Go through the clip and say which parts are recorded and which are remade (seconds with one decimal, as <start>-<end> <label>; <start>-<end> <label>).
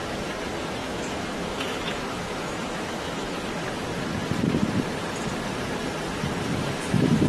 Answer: 0.0-0.8 recorded; 0.8-3.4 remade; 3.4-7.3 recorded